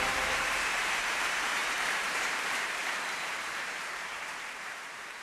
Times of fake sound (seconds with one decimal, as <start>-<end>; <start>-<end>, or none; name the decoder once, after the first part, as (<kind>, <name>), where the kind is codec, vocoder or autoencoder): 0.0-2.8 (vocoder, BigVGAN v2); 3.4-5.2